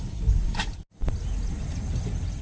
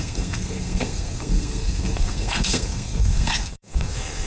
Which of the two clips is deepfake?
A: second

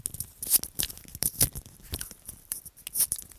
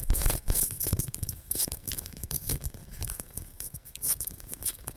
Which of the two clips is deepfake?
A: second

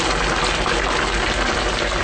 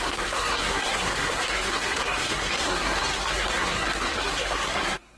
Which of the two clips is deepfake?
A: second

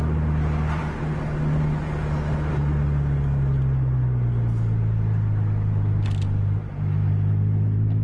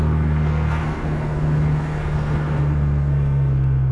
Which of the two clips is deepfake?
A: second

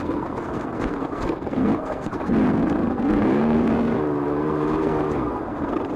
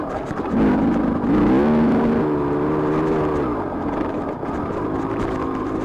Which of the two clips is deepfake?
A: first